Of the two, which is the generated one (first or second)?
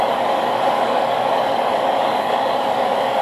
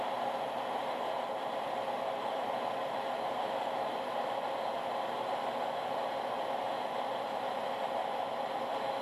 first